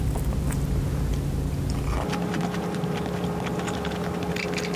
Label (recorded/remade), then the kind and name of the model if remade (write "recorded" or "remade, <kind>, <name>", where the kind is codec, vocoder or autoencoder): remade, vocoder, BigVGAN v2